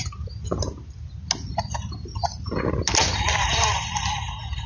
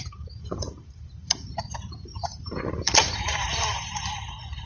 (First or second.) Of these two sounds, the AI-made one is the second